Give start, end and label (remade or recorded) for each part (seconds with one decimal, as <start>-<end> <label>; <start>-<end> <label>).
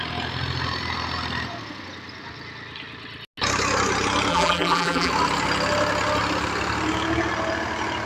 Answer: 0.0-4.3 recorded; 4.3-5.1 remade; 5.1-8.1 recorded